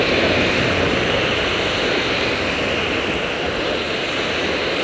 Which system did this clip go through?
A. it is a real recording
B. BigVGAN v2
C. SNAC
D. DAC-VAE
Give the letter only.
A